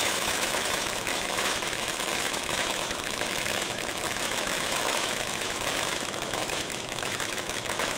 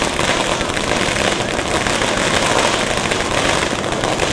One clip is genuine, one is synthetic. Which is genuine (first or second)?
second